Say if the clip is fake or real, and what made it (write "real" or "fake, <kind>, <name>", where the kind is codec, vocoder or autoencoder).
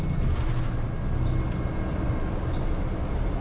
real